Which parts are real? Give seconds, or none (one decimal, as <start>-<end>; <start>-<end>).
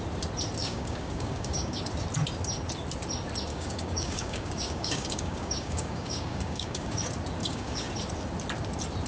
0.0-0.6; 1.8-3.5; 7.0-7.4; 7.9-9.1